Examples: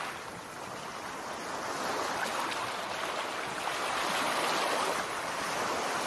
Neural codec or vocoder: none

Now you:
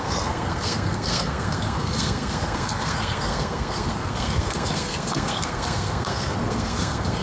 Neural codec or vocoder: codec, SNAC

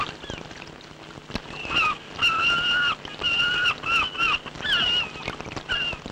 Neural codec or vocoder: none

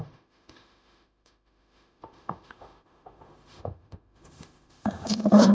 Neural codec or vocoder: autoencoder, DAC-VAE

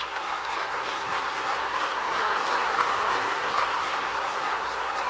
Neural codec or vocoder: codec, SNAC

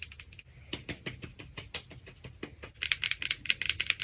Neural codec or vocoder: none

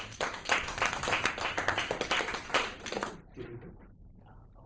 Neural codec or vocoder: vocoder, BigVGAN v2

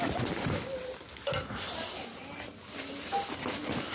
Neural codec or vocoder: none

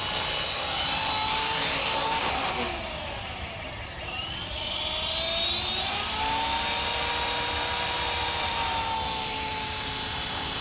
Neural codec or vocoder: none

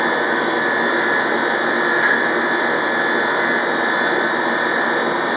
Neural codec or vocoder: none